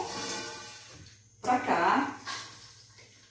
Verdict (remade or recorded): recorded